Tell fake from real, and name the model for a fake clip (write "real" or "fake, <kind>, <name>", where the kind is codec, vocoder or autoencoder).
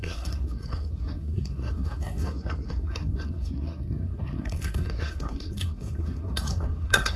fake, codec, SNAC